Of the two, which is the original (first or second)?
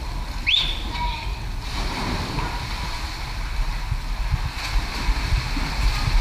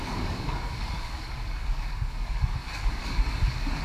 first